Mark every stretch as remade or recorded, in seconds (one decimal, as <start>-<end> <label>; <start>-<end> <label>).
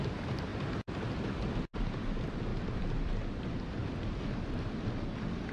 0.0-5.5 recorded